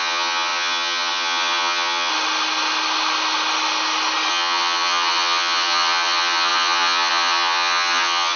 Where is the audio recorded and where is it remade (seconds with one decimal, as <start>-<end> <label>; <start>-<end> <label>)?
0.0-2.1 remade; 2.1-4.3 recorded; 4.3-8.4 remade